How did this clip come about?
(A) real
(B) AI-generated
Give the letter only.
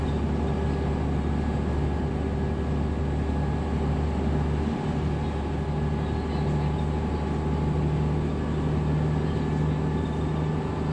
A